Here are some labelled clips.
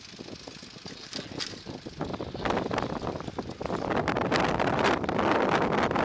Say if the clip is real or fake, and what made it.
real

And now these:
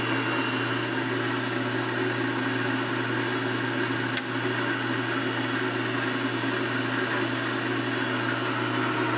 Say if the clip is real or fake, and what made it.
real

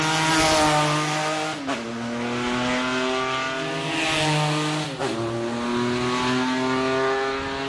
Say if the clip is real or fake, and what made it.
real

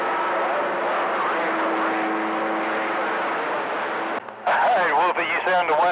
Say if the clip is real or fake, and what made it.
real